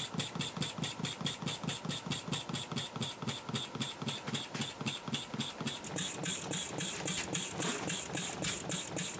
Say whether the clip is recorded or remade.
recorded